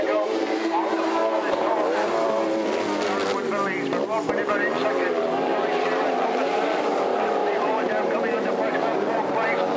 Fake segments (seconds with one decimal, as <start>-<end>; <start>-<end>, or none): 0.0-1.2; 4.3-9.8